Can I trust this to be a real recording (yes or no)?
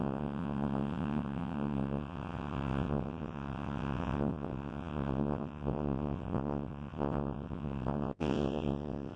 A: no